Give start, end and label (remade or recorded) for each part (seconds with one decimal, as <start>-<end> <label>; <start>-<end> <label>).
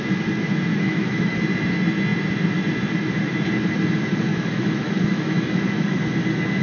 0.0-0.7 recorded; 0.7-1.4 remade; 1.4-4.3 recorded; 4.3-6.0 remade; 6.0-6.6 recorded